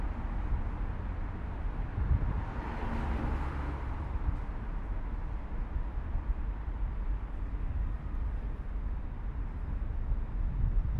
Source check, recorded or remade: recorded